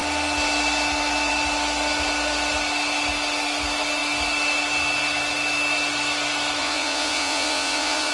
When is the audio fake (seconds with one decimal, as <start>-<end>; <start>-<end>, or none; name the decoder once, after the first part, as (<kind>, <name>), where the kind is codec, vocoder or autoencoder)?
6.6-8.1 (vocoder, Vocos)